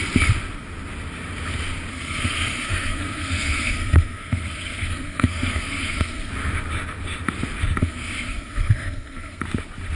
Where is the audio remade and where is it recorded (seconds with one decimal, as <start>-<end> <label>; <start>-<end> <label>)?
0.0-1.9 recorded; 1.9-6.3 remade; 6.3-7.8 recorded; 7.8-9.4 remade; 9.4-10.0 recorded

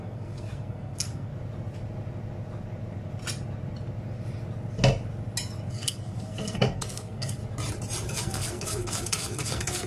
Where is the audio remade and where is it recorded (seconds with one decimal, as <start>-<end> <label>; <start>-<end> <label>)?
0.0-1.3 remade; 1.3-5.7 recorded; 5.7-7.4 remade; 7.4-8.1 recorded; 8.1-9.9 remade

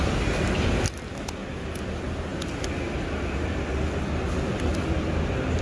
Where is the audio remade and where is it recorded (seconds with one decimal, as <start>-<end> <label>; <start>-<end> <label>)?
0.0-5.6 recorded

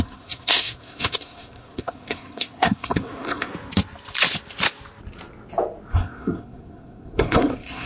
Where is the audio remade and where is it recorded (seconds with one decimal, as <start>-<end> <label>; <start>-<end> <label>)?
0.0-3.5 remade; 3.5-5.9 recorded; 5.9-7.9 remade